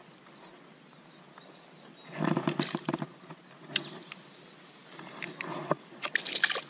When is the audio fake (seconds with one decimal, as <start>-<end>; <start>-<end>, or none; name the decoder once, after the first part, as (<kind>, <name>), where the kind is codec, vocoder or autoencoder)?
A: none